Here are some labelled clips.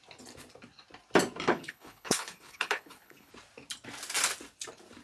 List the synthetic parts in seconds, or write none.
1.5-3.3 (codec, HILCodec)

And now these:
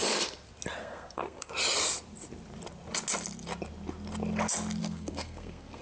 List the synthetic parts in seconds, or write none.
0.8-1.5 (codec, SNAC); 4.8-5.8

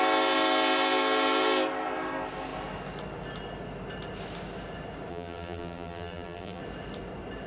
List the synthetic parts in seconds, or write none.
5.1-6.6 (vocoder, BigVGAN v2)

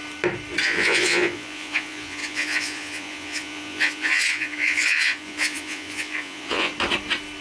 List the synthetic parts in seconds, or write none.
0.6-6.7 (vocoder, Vocos)

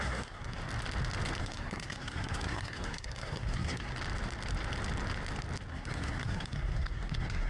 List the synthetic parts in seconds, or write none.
0.0-0.6 (codec, SNAC); 1.4-3.9; 5.7-7.5

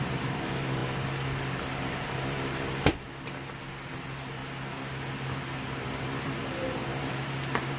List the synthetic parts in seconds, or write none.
0.0-4.4 (vocoder, BigVGAN v2); 6.2-7.8